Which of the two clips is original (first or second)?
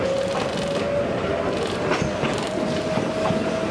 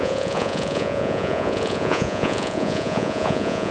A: first